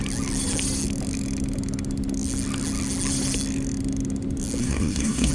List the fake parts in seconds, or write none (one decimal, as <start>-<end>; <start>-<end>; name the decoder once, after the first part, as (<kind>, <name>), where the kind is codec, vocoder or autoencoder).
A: 4.6-5.3 (codec, SNAC)